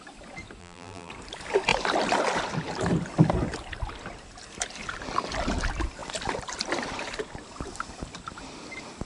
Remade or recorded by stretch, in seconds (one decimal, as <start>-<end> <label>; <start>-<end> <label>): 0.0-0.6 recorded; 0.6-1.1 remade; 1.1-9.1 recorded